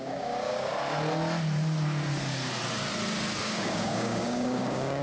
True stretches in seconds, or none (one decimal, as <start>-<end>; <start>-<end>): 0.7-3.4